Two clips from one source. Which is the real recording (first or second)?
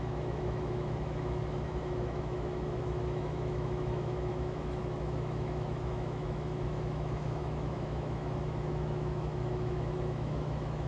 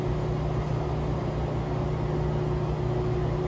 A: second